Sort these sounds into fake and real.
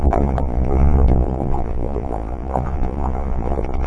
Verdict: fake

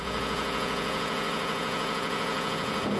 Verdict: fake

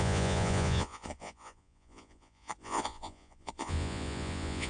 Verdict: fake